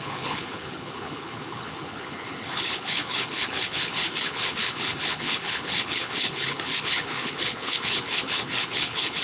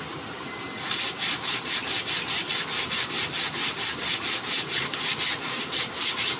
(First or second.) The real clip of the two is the second